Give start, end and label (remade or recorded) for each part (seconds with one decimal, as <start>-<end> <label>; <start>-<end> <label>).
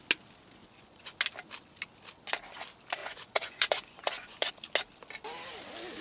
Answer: 0.0-0.6 recorded; 0.6-1.1 remade; 1.1-3.0 recorded; 3.0-4.5 remade; 4.5-6.0 recorded